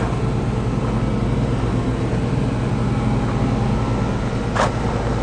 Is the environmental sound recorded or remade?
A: recorded